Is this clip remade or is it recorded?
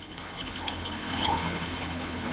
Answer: remade